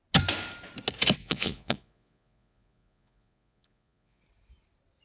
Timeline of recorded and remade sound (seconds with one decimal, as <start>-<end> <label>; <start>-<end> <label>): 0.0-1.2 recorded; 1.2-4.2 remade; 4.2-5.0 recorded